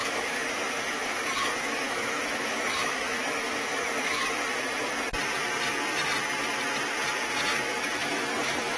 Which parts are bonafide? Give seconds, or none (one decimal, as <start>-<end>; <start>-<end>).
4.4-8.0